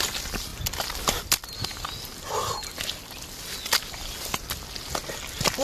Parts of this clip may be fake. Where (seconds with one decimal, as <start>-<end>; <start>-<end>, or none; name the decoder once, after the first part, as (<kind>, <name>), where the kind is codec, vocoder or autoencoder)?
none